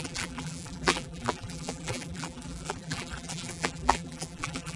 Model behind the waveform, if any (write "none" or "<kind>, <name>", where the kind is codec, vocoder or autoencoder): vocoder, BigVGAN v2